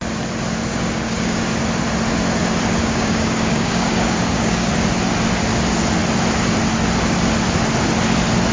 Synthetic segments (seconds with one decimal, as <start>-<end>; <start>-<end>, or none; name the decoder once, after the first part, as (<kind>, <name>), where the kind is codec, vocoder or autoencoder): 0.7-1.4 (codec, DAC); 2.8-4.7